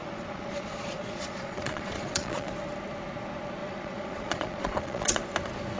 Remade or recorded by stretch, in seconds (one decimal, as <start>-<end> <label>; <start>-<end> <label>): 0.0-2.5 remade; 2.5-3.6 recorded; 3.6-5.2 remade; 5.2-5.8 recorded

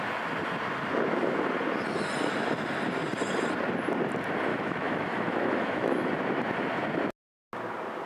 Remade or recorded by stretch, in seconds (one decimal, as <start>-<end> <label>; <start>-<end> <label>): 0.0-4.5 recorded; 4.5-6.1 remade; 6.1-8.1 recorded

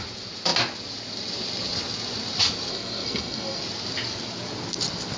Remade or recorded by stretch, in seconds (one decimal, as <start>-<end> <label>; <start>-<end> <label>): 0.0-2.7 recorded; 2.7-3.6 remade; 3.6-5.2 recorded

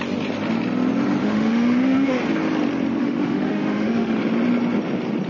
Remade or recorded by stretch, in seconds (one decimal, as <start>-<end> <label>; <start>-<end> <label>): 0.0-1.2 recorded; 1.2-2.2 remade; 2.2-3.0 recorded; 3.0-4.2 remade; 4.2-5.3 recorded